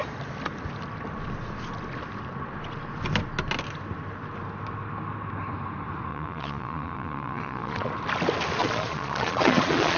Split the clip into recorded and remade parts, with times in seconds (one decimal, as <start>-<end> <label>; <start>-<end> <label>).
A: 0.0-6.1 recorded; 6.1-7.9 remade; 7.9-8.6 recorded; 8.6-10.0 remade